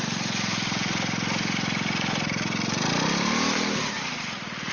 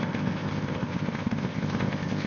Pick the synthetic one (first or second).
second